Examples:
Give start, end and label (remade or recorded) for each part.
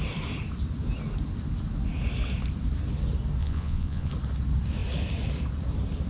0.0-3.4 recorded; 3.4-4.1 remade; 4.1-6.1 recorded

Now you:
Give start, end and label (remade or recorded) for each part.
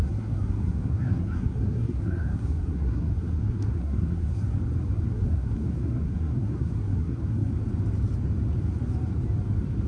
0.0-4.6 remade; 4.6-5.1 recorded; 5.1-7.5 remade; 7.5-9.9 recorded